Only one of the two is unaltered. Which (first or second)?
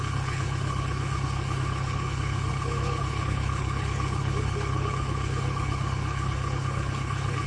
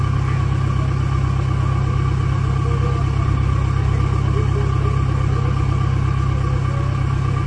second